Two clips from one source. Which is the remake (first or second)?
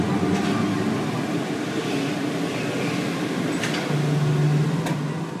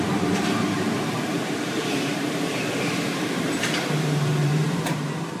second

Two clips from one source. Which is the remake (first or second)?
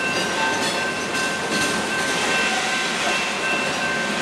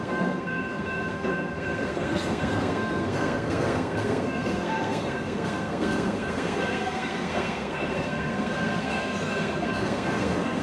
second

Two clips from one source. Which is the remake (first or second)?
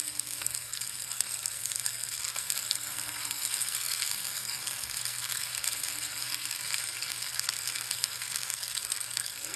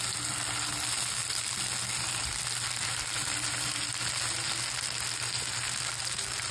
first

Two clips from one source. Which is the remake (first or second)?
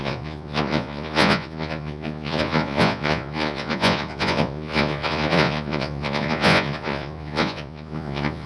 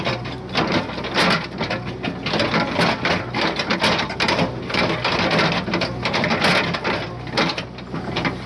first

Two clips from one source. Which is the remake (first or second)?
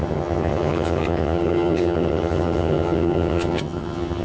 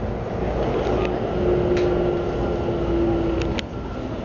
first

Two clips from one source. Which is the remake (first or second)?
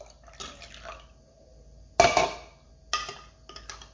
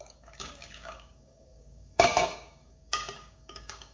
second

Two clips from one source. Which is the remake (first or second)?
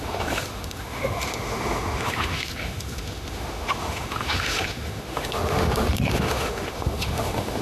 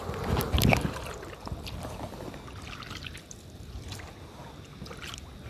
first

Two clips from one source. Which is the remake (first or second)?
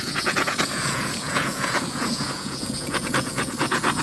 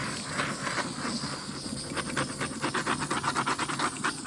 first